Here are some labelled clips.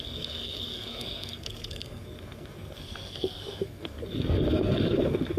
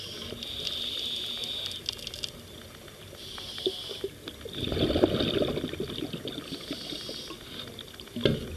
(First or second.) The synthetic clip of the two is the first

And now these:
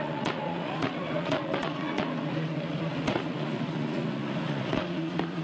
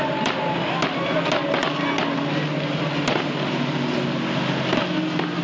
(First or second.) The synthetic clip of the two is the first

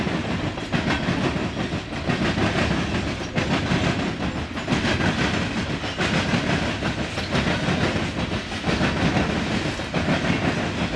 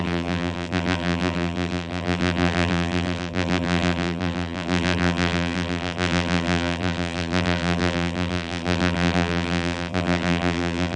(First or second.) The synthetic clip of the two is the second